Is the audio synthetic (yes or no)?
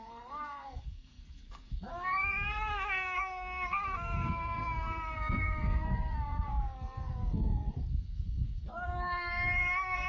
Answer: yes